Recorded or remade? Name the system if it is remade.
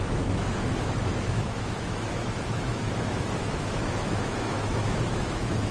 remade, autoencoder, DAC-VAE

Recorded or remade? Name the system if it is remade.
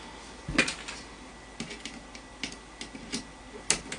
recorded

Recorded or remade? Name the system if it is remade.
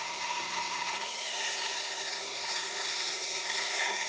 remade, codec, SNAC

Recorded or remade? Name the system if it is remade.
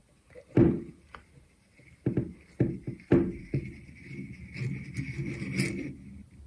recorded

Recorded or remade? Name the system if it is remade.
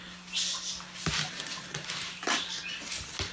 recorded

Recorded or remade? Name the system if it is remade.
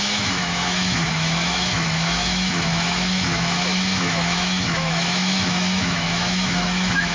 remade, autoencoder, DAC-VAE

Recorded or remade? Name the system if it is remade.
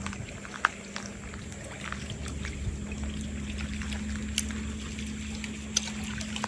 recorded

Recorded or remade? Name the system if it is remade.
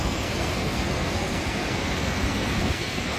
remade, codec, SNAC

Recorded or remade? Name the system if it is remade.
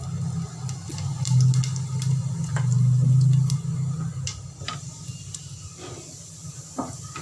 recorded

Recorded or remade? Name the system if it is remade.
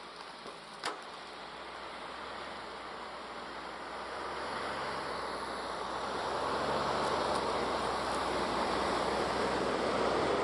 remade, vocoder, BigVGAN v2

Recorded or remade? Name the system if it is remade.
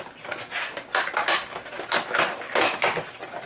recorded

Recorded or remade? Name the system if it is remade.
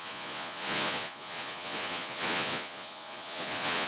remade, vocoder, Vocos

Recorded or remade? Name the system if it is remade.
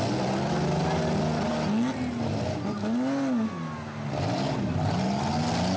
recorded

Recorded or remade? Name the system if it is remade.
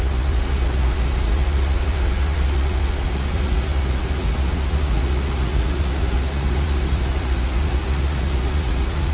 remade, vocoder, Vocos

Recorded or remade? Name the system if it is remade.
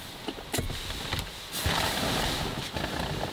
recorded